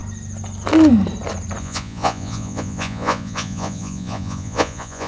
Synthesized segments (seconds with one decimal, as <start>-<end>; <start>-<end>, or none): 1.6-5.1